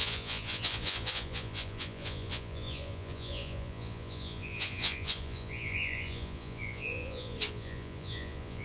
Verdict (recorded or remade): remade